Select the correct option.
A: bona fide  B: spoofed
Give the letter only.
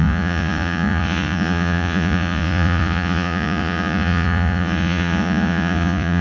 B